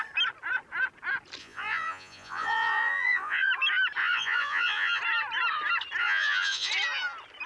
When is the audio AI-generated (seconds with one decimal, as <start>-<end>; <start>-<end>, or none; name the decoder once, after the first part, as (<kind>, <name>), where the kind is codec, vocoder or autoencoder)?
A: 1.4-3.5 (vocoder, Vocos); 4.0-5.0; 6.0-6.7